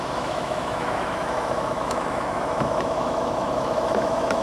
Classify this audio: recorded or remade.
remade